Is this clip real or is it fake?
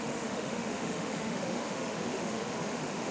fake